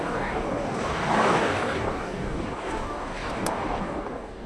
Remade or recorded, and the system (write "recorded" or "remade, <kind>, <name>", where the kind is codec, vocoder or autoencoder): remade, codec, DAC